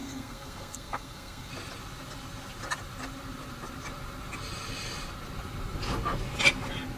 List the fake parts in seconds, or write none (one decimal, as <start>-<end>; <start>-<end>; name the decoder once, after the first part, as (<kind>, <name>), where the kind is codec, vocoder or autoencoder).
0.0-1.5 (codec, SNAC)